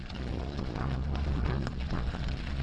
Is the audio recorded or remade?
remade